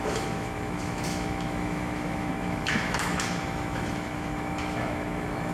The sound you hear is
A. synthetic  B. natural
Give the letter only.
A